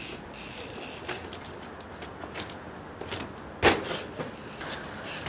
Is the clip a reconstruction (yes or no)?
no